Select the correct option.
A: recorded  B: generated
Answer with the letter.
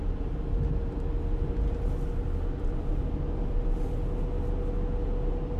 A